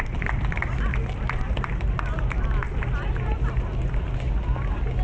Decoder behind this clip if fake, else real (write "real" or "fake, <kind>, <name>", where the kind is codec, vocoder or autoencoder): real